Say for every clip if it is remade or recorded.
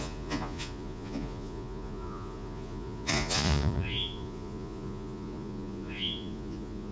remade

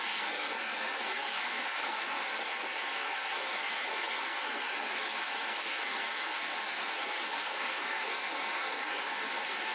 remade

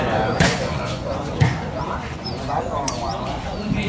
remade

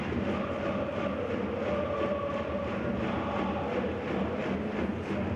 recorded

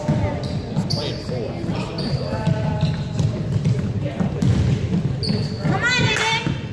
recorded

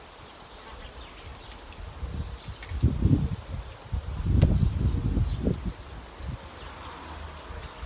recorded